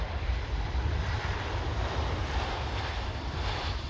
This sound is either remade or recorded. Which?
remade